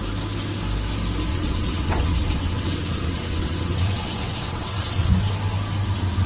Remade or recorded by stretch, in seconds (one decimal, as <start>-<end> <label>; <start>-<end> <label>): 0.0-1.3 recorded; 1.3-5.1 remade; 5.1-6.3 recorded